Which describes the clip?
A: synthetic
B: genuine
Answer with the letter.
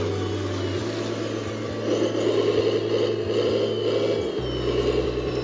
B